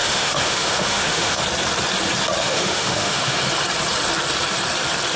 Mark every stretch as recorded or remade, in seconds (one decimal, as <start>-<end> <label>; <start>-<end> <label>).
0.0-1.4 remade; 1.4-2.4 recorded; 2.4-3.4 remade; 3.4-5.2 recorded